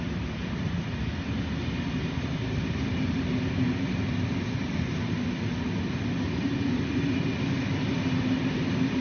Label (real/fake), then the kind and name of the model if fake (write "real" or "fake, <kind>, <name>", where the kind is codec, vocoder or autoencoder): real